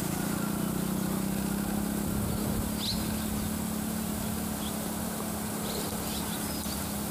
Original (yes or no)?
yes